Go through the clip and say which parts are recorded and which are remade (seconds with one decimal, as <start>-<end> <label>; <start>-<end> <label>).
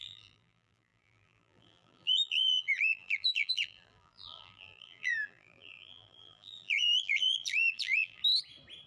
0.0-8.2 remade; 8.2-8.9 recorded